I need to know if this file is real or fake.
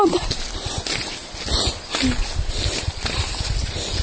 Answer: real